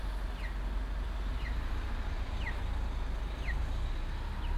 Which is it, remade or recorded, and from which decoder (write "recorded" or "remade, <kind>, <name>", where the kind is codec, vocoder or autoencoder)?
recorded